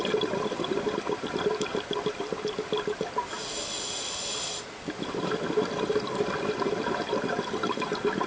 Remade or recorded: recorded